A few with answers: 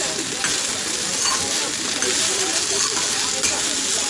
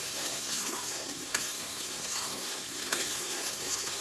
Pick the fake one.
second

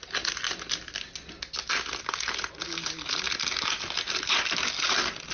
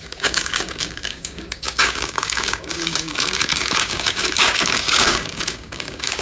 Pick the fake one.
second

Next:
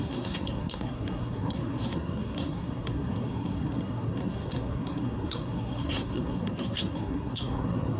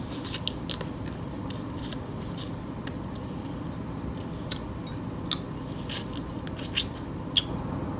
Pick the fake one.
first